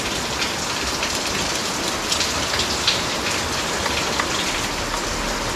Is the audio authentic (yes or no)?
no